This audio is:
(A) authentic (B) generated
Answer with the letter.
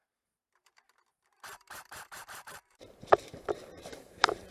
B